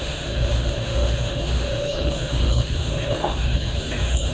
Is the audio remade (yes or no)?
yes